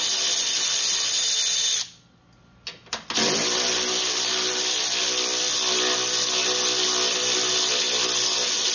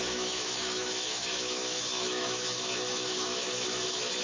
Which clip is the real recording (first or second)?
first